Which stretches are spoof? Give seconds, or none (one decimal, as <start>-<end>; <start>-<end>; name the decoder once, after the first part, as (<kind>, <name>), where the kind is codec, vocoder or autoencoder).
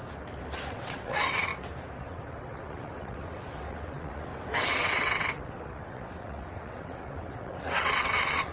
0.7-1.5 (vocoder, WaveNeXt); 2.0-4.3; 4.8-8.5